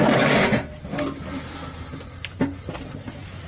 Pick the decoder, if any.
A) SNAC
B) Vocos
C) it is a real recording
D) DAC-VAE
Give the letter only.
C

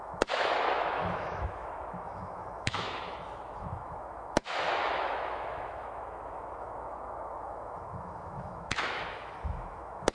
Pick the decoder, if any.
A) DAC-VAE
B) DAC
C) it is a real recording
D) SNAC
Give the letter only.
A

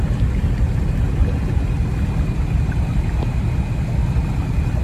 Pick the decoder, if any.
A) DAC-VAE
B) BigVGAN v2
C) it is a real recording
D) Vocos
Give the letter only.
C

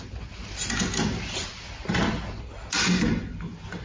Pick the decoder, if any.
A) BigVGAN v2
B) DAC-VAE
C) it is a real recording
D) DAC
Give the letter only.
C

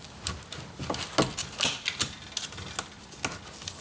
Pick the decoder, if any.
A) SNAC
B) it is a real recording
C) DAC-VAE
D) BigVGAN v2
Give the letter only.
B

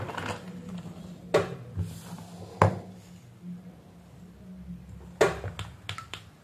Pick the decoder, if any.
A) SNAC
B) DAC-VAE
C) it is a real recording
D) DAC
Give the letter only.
C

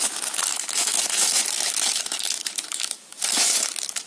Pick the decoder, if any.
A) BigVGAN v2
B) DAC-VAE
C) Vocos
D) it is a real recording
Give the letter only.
B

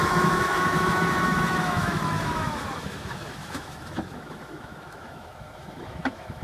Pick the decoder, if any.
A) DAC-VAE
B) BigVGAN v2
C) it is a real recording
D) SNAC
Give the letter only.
A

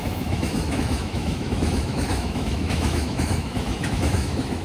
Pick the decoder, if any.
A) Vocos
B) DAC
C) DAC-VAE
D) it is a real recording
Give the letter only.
C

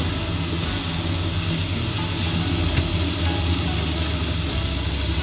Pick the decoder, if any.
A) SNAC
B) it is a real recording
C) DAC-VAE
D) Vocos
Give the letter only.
B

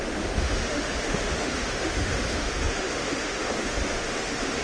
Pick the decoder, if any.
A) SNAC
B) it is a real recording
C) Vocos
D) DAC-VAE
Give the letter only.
D